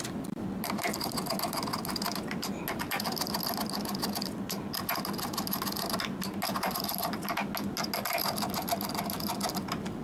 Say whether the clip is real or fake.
real